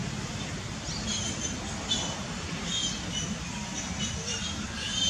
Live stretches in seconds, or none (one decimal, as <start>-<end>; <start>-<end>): 0.0-1.9; 2.8-3.4